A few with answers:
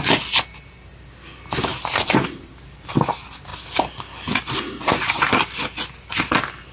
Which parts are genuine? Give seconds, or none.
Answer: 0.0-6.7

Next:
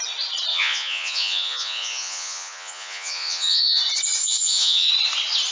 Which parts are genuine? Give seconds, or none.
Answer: 0.0-0.5; 3.8-4.2; 4.9-5.5

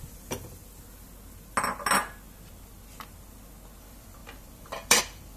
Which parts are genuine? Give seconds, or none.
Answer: 0.6-3.8

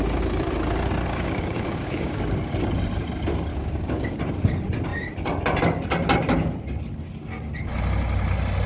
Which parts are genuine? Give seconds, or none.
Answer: 0.0-1.1; 2.2-3.5; 4.2-8.7

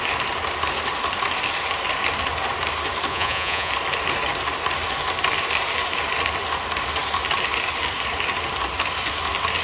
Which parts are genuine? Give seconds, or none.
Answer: 0.0-3.1; 3.7-9.6

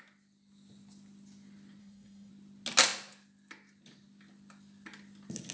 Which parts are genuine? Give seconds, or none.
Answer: 0.0-1.8; 2.3-5.5

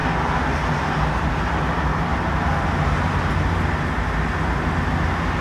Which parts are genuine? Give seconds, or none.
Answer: 0.0-5.4